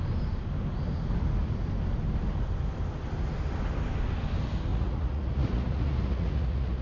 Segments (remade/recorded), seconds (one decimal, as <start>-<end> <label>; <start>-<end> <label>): 0.0-4.7 recorded; 4.7-6.8 remade